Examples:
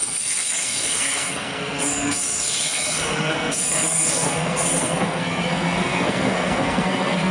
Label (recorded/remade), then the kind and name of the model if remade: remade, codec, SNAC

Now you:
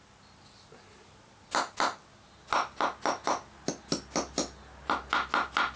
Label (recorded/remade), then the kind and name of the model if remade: recorded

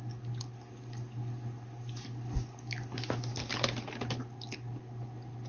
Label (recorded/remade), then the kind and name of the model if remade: recorded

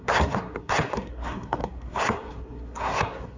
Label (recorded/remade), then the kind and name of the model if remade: remade, codec, SNAC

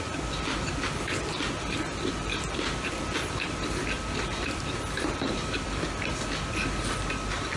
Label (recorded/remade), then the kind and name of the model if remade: recorded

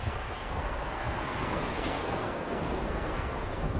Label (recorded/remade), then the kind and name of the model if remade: remade, codec, SNAC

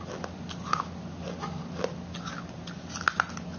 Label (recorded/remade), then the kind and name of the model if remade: recorded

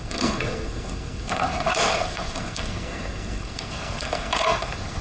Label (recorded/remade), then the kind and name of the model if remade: remade, codec, SNAC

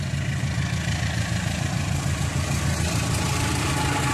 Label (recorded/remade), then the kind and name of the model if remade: recorded